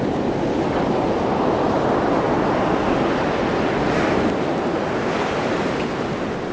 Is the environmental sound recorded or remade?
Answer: recorded